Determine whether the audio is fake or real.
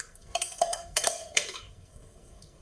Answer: fake